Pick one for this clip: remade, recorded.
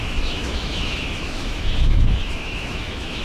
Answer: remade